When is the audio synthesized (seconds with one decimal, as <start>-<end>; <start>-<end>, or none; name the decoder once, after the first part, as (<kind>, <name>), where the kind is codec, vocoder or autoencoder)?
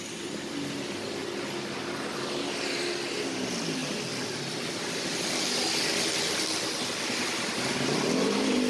none